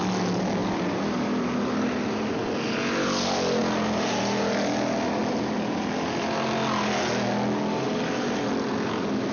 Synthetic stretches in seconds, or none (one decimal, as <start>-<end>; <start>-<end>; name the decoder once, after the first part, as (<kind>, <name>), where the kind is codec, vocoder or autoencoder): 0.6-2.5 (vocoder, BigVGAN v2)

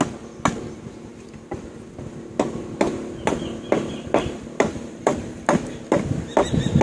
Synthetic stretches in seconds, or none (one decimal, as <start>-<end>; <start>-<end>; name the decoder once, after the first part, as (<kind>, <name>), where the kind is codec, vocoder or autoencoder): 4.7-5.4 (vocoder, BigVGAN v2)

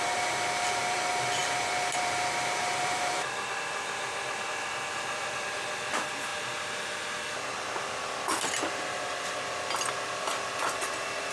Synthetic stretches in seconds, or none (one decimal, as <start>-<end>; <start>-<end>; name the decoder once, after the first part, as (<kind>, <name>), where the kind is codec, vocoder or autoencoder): 0.0-6.3 (vocoder, BigVGAN v2); 8.8-11.3

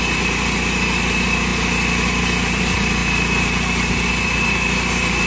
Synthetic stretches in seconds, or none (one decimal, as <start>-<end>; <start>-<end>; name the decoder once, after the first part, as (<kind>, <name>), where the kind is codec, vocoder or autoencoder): none

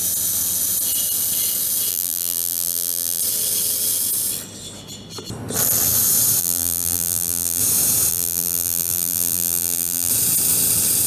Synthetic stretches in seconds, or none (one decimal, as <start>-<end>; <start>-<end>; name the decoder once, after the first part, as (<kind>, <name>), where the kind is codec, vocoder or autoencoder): 1.9-3.2 (vocoder, BigVGAN v2); 6.4-7.6; 8.1-10.1